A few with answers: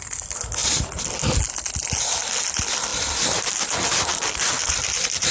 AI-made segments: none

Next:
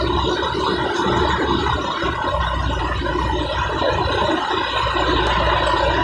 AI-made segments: none

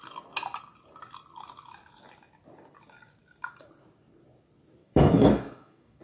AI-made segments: 4.8-6.0 (autoencoder, DAC-VAE)

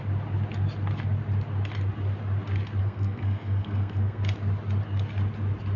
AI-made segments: 2.8-4.2 (codec, SNAC)